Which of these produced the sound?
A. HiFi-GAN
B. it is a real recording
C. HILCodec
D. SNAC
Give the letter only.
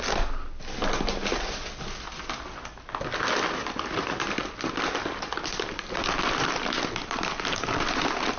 B